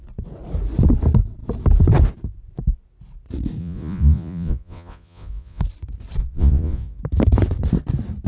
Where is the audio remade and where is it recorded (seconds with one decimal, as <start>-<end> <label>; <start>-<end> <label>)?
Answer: 0.0-3.6 recorded; 3.6-5.6 remade; 5.6-6.2 recorded; 6.2-7.0 remade; 7.0-8.3 recorded